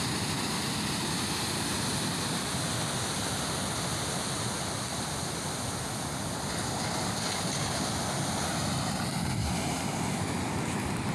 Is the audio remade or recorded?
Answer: recorded